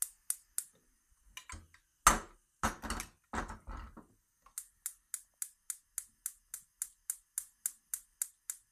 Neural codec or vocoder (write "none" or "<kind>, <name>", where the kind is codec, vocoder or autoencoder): none